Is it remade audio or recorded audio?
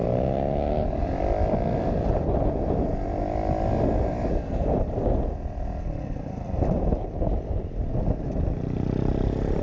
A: recorded